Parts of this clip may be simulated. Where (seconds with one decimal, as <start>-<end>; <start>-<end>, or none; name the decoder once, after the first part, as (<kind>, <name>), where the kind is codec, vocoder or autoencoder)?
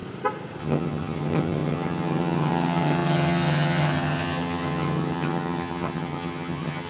0.6-6.9 (vocoder, HiFi-GAN)